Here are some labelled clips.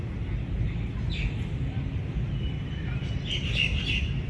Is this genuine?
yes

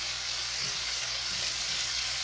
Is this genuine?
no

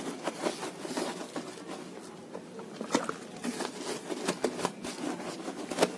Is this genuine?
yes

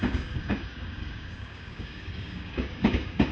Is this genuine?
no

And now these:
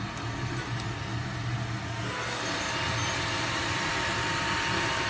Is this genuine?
yes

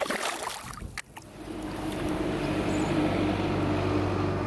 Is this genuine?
yes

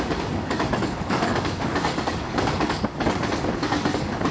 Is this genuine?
no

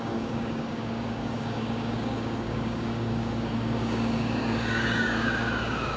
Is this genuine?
no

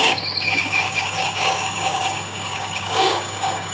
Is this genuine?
no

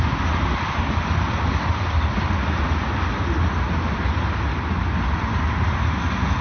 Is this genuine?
yes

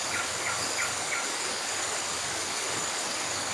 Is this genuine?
no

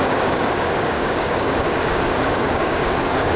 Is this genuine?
no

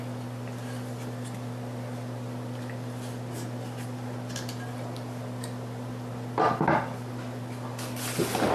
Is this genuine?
yes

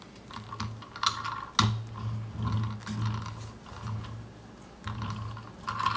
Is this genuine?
yes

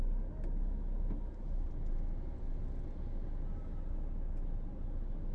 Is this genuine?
yes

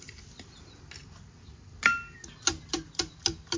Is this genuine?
yes